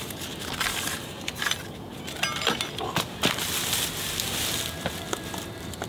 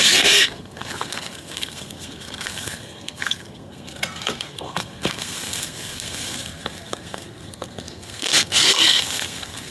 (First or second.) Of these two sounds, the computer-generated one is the second